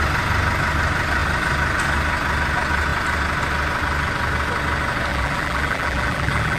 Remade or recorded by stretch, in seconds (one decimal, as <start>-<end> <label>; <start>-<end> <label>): 0.0-5.1 recorded; 5.1-6.6 remade

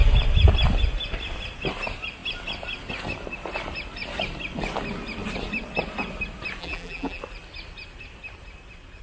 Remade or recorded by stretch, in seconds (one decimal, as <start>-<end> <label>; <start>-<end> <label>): 0.0-6.6 recorded; 6.6-7.2 remade; 7.2-9.0 recorded